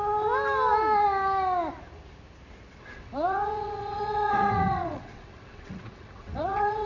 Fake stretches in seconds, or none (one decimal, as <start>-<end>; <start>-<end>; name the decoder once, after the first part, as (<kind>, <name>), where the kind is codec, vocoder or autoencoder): 2.8-6.9 (vocoder, WaveNeXt)